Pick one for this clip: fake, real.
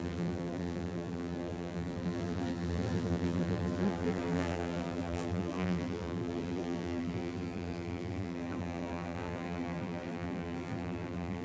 fake